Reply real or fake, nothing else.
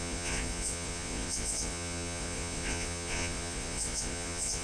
fake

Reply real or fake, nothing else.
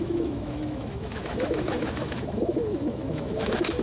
fake